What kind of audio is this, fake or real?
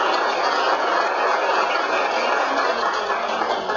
real